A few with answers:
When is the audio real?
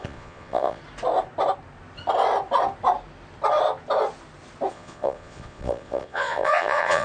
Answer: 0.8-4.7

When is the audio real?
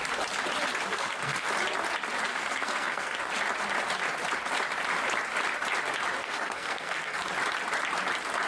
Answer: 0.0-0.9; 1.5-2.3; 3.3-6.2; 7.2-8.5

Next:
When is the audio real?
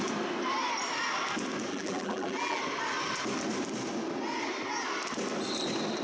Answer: 0.0-1.7; 2.6-6.0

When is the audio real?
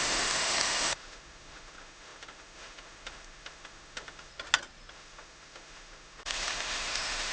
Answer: 4.3-4.9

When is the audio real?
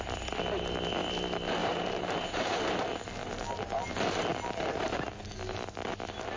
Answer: 0.0-1.6; 2.8-6.4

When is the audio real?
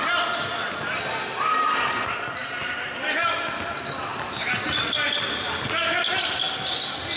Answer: 0.0-7.2